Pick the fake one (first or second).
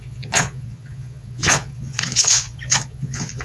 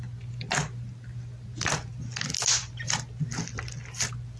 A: first